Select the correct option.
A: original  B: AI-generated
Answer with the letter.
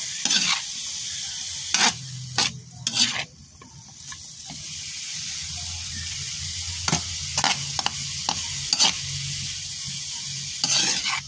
A